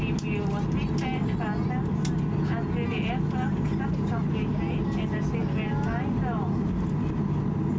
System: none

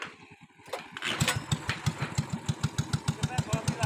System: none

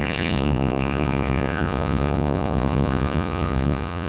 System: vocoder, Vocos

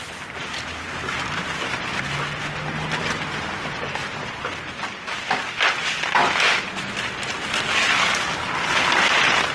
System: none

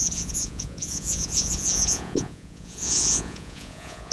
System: vocoder, Vocos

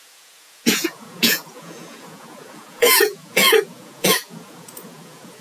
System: vocoder, Vocos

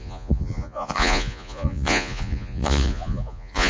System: vocoder, Vocos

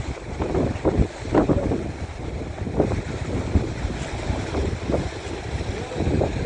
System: none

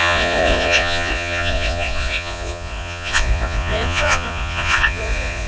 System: vocoder, Vocos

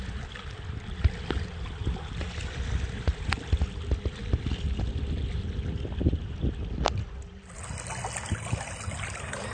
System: none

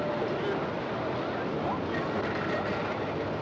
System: none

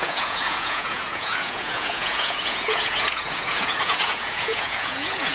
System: vocoder, Vocos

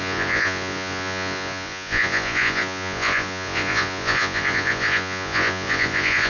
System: vocoder, Vocos